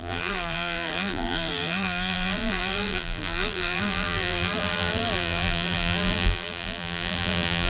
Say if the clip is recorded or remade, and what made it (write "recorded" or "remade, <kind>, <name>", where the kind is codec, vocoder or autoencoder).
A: remade, vocoder, BigVGAN v2